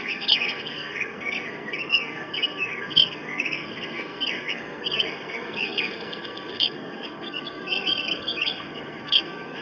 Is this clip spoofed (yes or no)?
yes